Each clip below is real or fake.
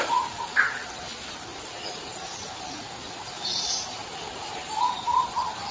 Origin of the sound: real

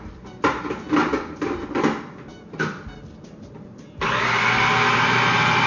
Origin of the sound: real